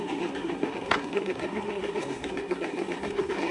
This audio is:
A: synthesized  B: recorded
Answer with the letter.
A